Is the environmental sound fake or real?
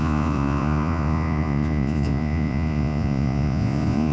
fake